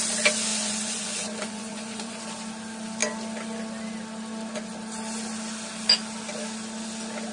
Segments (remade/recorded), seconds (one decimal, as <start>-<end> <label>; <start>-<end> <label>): 0.0-0.5 recorded; 0.5-2.2 remade; 2.2-7.3 recorded